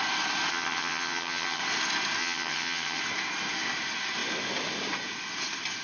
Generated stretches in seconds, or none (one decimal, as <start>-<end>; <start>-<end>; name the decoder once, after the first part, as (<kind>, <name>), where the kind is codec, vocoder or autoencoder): 0.5-1.6 (vocoder, HiFi-GAN); 2.2-3.0